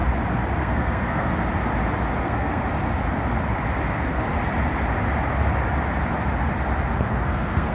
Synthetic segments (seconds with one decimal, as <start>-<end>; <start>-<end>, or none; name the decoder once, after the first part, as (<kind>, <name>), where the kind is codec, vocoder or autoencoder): 0.6-1.3 (codec, SNAC); 2.2-2.6; 7.1-7.7